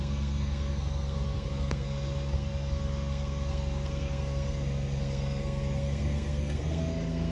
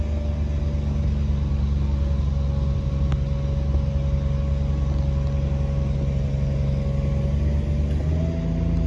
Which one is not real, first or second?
first